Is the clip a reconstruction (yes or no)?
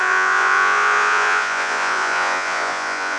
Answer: yes